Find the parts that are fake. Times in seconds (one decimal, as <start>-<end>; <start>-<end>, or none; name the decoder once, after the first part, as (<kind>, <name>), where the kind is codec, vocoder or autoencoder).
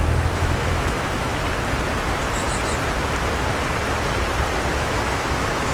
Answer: 0.0-1.3 (autoencoder, DAC-VAE); 4.7-5.7